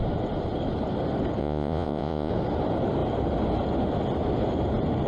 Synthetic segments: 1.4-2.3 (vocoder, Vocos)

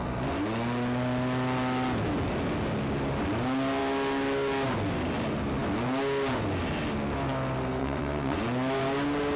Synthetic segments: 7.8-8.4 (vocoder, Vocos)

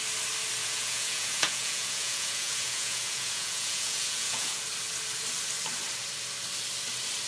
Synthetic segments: 0.6-4.6 (vocoder, Vocos)

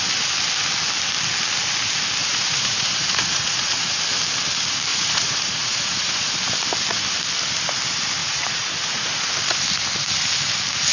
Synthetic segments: 2.2-4.0 (vocoder, Vocos); 4.9-6.3; 8.2-9.3

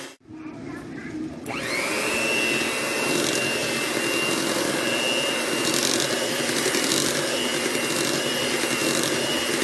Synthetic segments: none

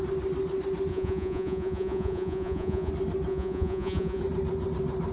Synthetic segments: 0.9-2.9 (vocoder, Vocos); 3.3-4.2

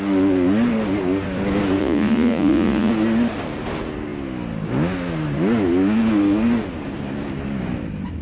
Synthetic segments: 1.8-2.9 (vocoder, Vocos)